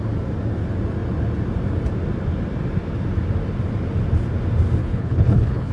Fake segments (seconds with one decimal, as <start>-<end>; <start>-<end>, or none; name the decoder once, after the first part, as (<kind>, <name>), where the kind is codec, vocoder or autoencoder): 4.8-5.7 (codec, HILCodec)

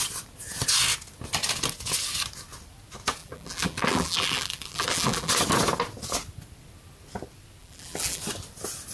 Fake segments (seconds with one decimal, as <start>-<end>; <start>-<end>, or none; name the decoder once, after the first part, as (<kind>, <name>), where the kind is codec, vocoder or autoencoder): 3.2-5.3 (vocoder, BigVGAN v2); 7.6-8.2

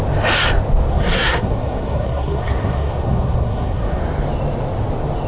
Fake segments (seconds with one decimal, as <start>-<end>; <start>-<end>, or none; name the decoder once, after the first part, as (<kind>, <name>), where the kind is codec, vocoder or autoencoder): 0.9-4.0 (codec, SNAC)